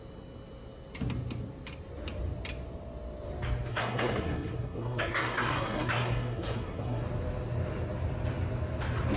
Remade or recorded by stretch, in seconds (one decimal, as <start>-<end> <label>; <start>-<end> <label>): 0.0-3.7 recorded; 3.7-7.0 remade; 7.0-9.2 recorded